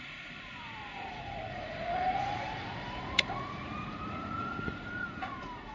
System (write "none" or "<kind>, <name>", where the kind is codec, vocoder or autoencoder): vocoder, Vocos